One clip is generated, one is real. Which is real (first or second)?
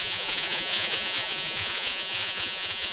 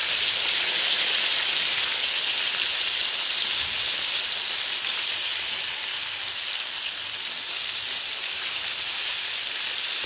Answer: second